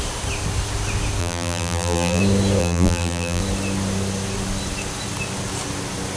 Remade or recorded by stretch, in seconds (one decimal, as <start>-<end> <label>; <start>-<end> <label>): 0.0-1.2 recorded; 1.2-2.2 remade; 2.2-2.6 recorded; 2.6-3.4 remade; 3.4-6.2 recorded